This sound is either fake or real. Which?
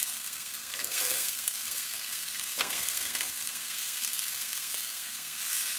fake